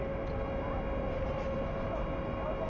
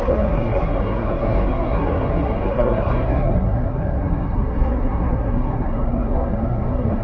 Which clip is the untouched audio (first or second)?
first